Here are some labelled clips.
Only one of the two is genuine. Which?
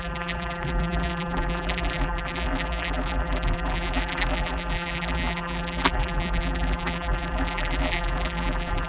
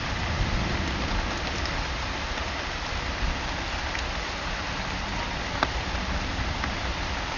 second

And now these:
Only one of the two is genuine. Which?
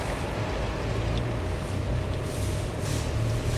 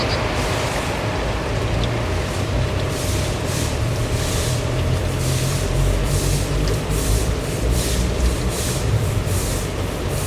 first